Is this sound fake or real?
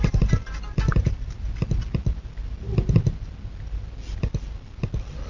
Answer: real